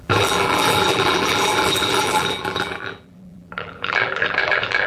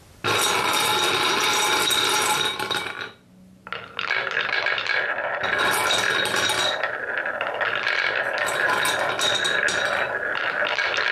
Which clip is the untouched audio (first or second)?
second